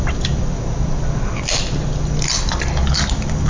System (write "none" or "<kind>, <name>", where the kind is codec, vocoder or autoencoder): none